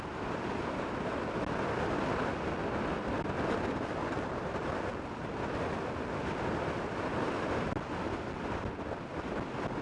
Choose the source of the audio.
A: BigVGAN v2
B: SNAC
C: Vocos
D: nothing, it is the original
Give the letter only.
D